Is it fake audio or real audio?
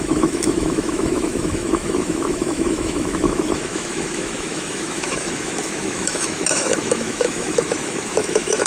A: fake